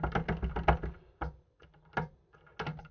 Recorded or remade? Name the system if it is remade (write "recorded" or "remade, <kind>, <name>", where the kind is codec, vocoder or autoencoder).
recorded